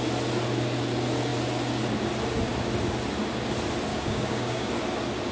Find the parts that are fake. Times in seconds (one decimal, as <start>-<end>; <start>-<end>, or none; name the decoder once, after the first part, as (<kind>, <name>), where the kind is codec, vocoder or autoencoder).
3.9-4.7 (codec, DAC)